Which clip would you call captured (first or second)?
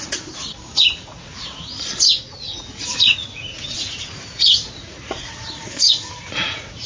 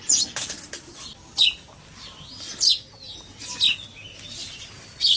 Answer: second